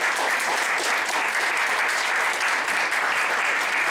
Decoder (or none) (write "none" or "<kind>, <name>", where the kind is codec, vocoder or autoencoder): none